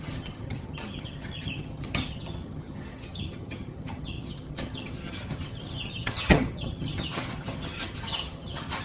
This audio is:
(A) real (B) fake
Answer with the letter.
B